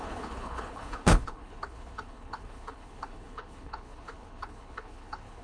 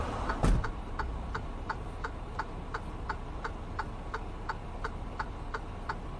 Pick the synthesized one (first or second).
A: first